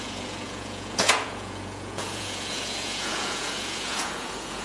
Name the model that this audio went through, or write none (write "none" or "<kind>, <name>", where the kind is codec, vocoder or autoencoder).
vocoder, Vocos